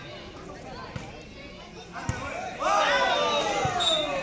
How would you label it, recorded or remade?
recorded